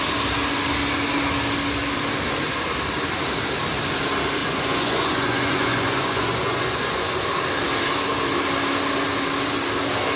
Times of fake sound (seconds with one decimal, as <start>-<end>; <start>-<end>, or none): 4.4-7.2